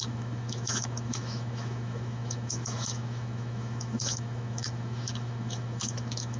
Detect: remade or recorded remade